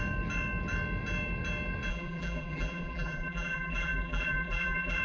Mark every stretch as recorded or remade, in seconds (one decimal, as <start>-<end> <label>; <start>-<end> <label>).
0.0-1.9 recorded; 1.9-5.0 remade